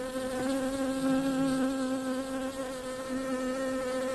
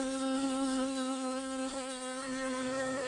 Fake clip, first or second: second